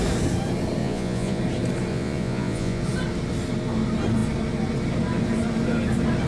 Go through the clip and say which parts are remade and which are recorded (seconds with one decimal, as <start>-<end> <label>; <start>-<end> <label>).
0.0-0.8 recorded; 0.8-1.4 remade; 1.4-1.9 recorded; 1.9-2.8 remade; 2.8-6.3 recorded